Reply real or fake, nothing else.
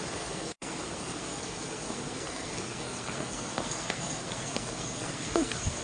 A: fake